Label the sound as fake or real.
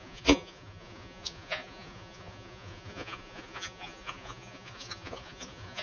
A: fake